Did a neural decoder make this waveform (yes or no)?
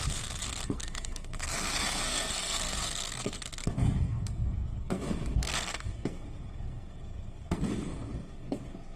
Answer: yes